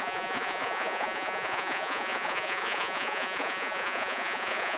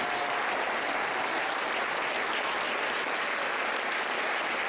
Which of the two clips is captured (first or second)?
second